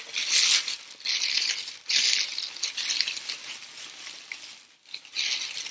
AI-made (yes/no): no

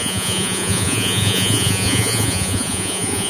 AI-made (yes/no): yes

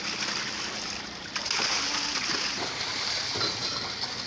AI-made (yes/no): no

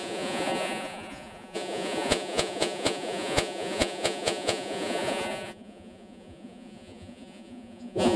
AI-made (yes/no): yes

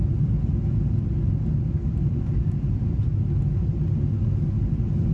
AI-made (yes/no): no